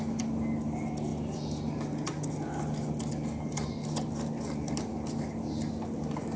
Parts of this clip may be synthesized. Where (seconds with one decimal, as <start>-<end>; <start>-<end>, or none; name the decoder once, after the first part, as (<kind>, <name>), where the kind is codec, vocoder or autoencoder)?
none